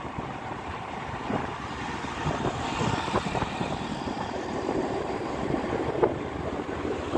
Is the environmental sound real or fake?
fake